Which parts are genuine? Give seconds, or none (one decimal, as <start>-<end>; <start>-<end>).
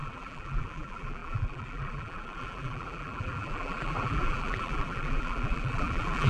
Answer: none